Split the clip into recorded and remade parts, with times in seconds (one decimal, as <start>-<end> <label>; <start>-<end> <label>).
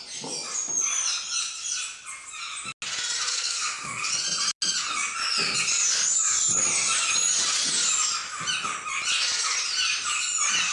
0.0-3.3 recorded; 3.3-4.1 remade; 4.1-10.7 recorded